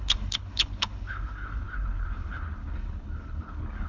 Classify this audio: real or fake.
fake